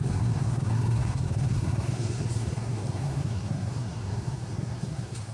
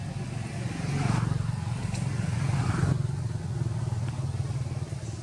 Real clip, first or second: second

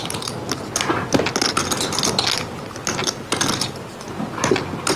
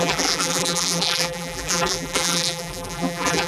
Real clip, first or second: first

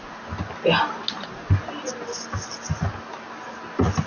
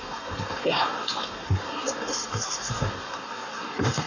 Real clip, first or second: first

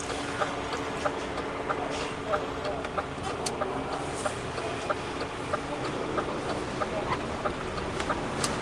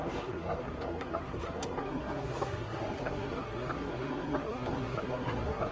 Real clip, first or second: first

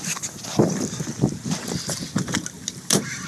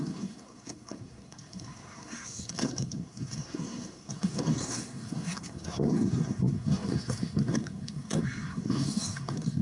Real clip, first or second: first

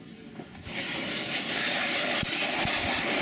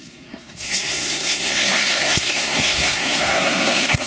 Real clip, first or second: first